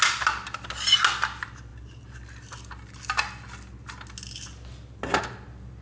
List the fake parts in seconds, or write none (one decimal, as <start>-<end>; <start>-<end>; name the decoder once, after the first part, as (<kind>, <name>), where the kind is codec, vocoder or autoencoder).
none